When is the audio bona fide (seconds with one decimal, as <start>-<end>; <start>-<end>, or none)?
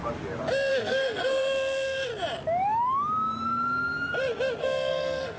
0.0-0.7; 2.1-4.6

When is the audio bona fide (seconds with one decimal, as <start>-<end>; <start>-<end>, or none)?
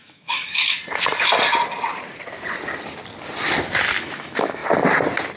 0.8-4.0; 4.6-5.4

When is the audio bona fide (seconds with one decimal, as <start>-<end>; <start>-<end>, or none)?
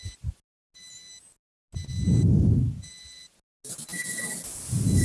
0.0-5.0